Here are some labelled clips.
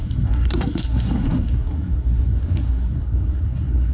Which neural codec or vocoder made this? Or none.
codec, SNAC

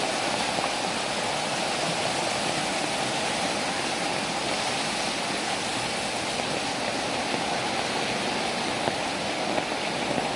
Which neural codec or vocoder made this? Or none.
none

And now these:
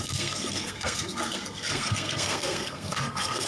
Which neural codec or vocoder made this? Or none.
codec, SNAC